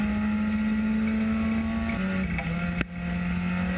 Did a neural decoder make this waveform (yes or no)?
no